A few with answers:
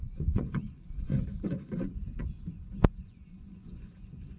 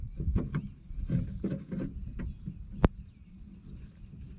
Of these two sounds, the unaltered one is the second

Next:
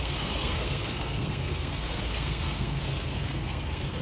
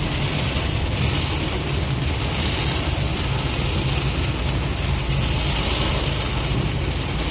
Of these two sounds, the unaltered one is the second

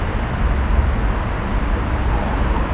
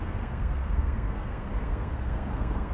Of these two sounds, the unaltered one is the first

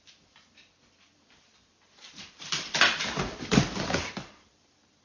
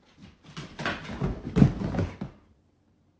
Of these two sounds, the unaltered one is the second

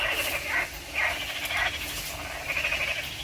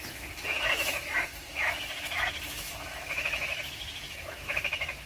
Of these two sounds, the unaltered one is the first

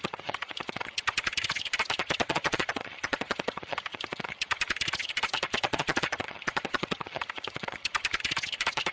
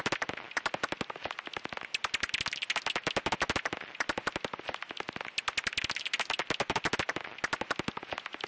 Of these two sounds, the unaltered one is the second